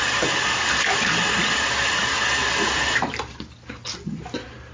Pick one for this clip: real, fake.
real